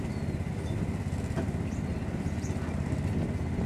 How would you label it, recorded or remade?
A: recorded